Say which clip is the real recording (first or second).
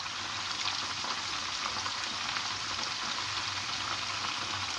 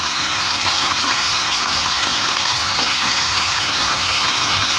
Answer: first